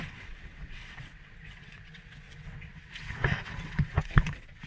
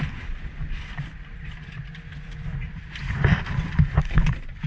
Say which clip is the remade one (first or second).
first